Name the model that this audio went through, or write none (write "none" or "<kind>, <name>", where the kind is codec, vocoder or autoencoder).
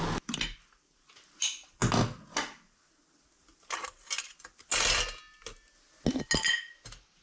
none